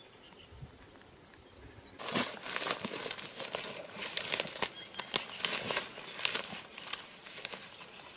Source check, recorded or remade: recorded